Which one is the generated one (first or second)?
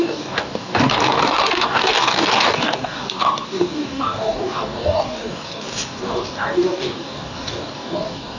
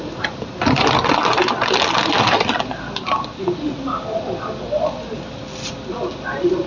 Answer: first